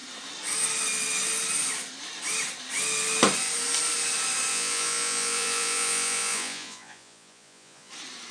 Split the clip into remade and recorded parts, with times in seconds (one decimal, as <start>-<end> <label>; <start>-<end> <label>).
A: 0.0-4.5 recorded; 4.5-7.9 remade; 7.9-8.3 recorded